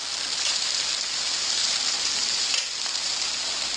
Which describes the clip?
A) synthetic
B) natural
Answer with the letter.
A